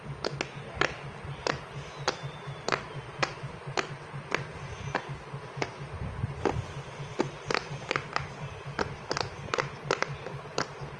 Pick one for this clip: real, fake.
real